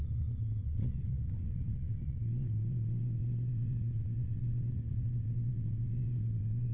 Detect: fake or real fake